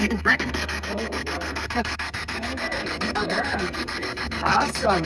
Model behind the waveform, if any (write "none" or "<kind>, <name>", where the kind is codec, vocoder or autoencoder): codec, SNAC